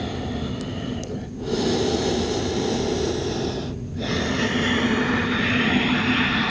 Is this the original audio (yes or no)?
yes